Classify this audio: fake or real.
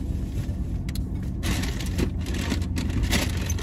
real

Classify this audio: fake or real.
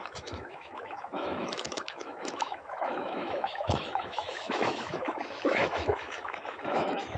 fake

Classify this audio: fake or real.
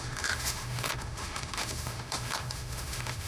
fake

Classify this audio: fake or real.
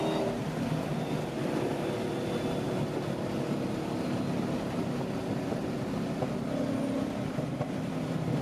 real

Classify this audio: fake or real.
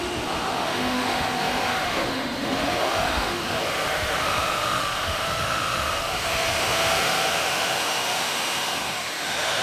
fake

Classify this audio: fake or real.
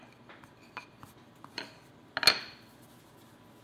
real